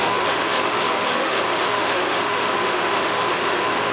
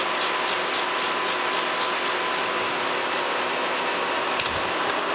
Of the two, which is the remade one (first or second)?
first